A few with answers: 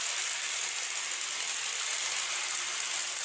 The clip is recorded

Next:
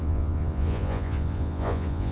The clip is remade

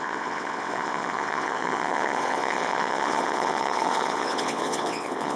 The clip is remade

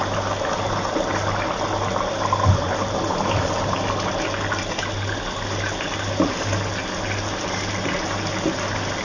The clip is recorded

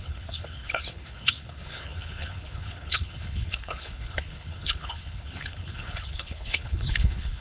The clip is remade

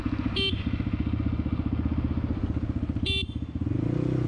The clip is recorded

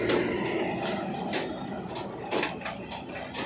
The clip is recorded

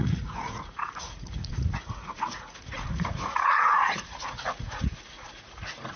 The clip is remade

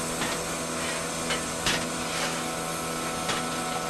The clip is recorded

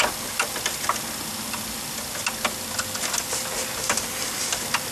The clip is recorded